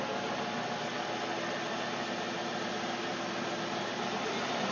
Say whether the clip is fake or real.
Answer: real